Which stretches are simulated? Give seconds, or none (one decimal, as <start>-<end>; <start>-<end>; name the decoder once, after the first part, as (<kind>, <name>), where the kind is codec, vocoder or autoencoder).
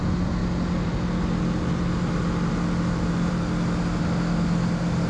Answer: none